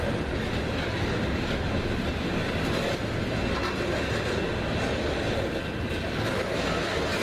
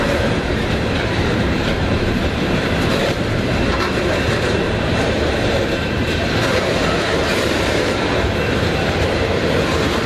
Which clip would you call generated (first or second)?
second